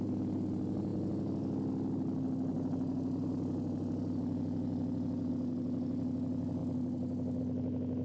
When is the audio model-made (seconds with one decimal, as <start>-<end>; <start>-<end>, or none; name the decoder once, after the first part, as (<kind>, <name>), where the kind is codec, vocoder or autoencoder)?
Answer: none

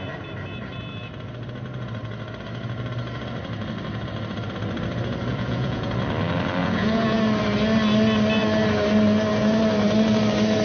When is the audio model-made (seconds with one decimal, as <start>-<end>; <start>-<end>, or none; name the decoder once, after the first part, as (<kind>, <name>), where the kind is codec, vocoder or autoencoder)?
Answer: 5.3-5.9 (vocoder, Vocos); 6.6-7.2

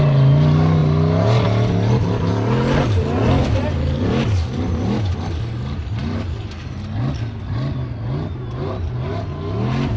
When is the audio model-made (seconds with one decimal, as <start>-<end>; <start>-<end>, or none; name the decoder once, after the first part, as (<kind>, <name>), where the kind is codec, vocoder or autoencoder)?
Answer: none

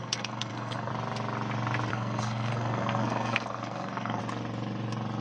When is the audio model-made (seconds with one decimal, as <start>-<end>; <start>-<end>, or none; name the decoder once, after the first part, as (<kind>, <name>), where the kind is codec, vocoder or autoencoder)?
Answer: 0.0-0.9 (codec, SNAC); 1.9-4.2

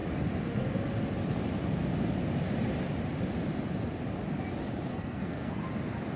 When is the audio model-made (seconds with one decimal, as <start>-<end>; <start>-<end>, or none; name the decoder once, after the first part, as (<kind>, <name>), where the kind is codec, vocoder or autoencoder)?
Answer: 4.9-5.6 (codec, SNAC)

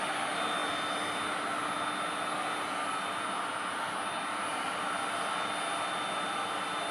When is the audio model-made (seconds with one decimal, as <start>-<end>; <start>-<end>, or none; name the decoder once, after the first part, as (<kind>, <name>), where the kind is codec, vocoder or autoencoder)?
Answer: none